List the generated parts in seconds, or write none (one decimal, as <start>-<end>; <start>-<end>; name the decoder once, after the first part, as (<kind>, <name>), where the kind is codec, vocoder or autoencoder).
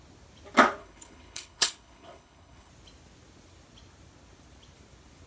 0.8-2.7 (codec, HILCodec)